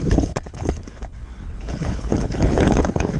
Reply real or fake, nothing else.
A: fake